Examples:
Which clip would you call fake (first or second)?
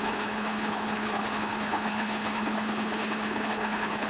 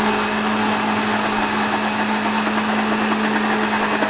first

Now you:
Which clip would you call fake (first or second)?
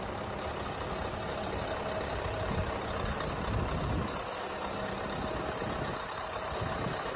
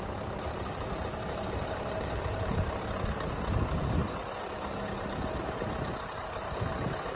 second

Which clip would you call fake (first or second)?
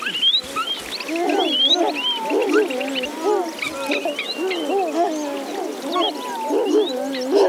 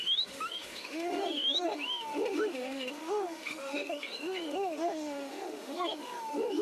second